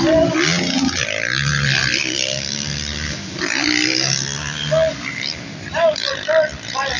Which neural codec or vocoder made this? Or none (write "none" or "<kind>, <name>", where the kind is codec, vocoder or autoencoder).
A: none